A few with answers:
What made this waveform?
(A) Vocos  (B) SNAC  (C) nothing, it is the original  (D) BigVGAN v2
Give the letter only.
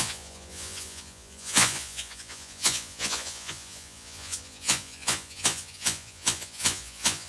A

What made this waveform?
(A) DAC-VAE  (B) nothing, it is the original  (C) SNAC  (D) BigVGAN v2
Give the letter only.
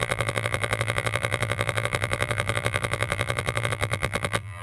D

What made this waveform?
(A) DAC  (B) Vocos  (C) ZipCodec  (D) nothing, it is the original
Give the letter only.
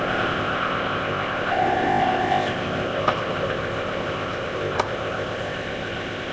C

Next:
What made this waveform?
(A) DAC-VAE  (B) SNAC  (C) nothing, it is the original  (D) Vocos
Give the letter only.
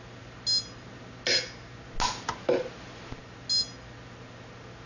C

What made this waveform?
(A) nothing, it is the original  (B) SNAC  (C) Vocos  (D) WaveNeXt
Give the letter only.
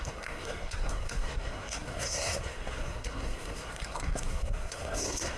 B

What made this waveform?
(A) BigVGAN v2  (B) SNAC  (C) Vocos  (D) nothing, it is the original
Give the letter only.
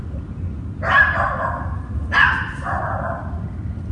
D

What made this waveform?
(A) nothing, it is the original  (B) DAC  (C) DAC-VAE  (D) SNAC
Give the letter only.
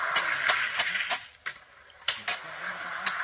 A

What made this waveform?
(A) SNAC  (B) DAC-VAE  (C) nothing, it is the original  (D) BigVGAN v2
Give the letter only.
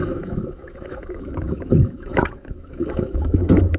B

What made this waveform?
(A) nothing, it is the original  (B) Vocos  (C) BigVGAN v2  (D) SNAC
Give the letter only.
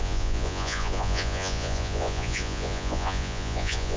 B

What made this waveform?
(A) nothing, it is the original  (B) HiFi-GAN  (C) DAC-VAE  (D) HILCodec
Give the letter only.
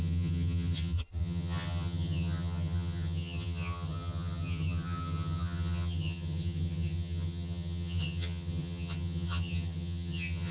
B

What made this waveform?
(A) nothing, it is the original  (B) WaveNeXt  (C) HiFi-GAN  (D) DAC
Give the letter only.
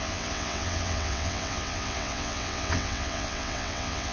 B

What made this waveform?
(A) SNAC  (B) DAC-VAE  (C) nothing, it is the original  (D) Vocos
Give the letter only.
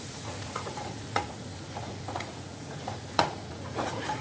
D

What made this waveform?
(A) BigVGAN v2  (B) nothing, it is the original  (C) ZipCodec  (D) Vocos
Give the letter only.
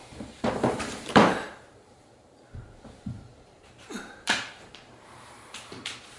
A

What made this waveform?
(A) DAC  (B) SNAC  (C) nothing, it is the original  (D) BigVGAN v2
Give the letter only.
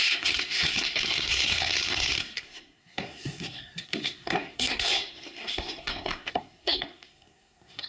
B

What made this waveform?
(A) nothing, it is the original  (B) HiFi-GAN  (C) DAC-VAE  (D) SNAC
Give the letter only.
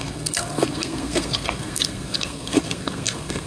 D